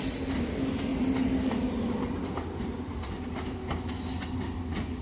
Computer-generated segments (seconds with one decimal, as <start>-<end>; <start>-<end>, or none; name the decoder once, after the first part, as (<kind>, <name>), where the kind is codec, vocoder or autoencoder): none